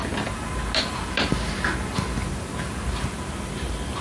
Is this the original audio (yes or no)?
yes